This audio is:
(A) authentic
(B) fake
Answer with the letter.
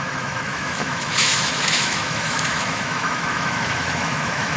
B